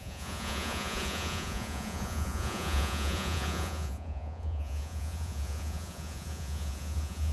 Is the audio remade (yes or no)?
yes